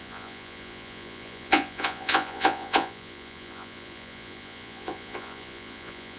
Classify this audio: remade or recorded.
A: remade